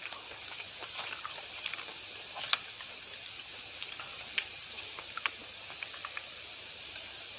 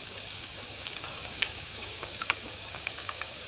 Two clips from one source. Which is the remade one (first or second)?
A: second